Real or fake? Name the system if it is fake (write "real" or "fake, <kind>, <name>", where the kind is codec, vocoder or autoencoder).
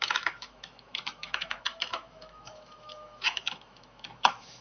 fake, autoencoder, DAC-VAE